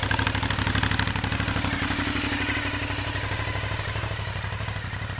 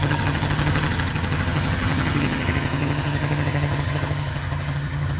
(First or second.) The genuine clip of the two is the first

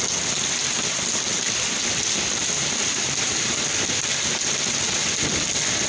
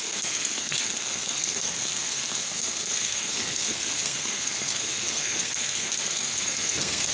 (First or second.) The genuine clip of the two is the first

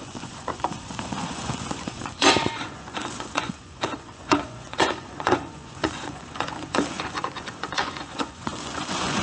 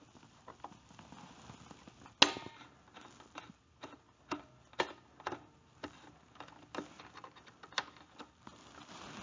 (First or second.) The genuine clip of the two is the second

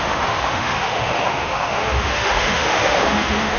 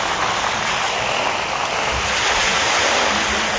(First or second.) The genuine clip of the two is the second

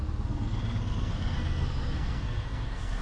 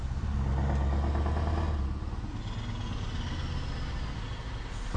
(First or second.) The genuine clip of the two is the second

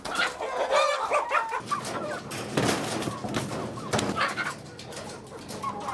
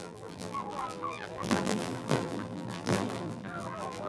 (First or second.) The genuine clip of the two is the first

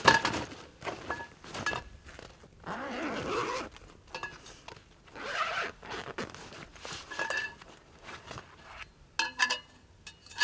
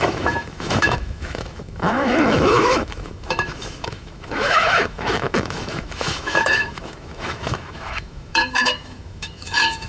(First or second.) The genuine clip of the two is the first